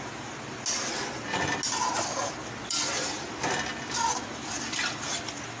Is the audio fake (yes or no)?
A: no